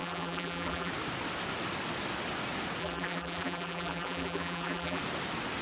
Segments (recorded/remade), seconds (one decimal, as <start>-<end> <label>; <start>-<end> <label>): 0.0-0.9 remade; 0.9-2.8 recorded; 2.8-5.0 remade; 5.0-5.6 recorded